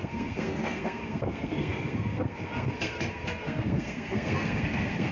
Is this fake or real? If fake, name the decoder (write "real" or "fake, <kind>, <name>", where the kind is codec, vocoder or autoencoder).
fake, codec, SNAC